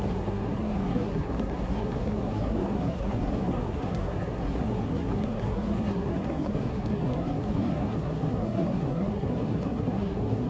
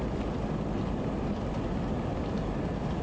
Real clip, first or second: second